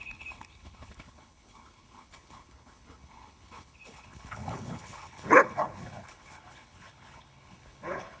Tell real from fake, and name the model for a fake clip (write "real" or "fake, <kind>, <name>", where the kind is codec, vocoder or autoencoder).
fake, codec, HILCodec